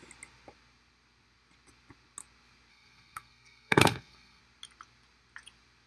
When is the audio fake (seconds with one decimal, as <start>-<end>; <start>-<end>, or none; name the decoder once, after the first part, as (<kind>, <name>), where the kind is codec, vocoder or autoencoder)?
2.7-4.4 (codec, SNAC)